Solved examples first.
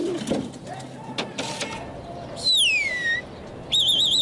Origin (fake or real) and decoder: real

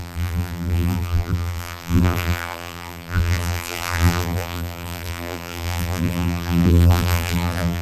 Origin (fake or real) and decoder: fake, vocoder, BigVGAN v2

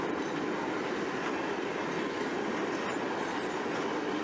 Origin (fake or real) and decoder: real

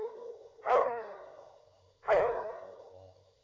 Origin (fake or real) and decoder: fake, codec, SNAC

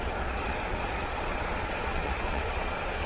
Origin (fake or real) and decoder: fake, vocoder, Vocos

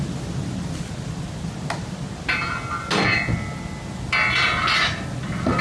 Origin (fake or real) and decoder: real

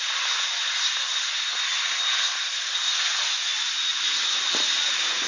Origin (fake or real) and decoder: real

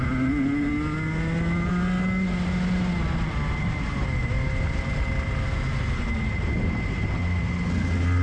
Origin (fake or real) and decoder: real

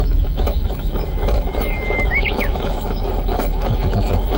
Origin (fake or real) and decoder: fake, autoencoder, DAC-VAE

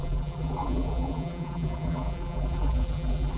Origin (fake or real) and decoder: fake, vocoder, BigVGAN v2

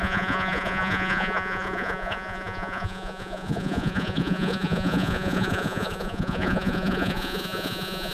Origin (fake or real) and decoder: fake, vocoder, Vocos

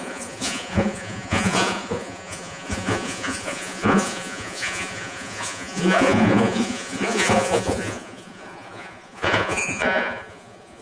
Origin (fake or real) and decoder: fake, vocoder, Vocos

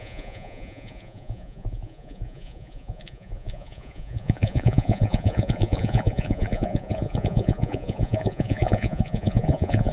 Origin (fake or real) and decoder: fake, vocoder, Vocos